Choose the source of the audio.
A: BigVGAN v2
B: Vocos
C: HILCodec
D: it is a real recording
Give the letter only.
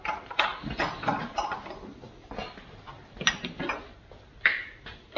D